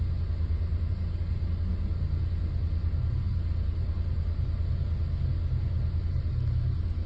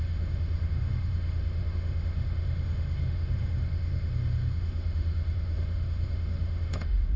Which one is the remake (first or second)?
second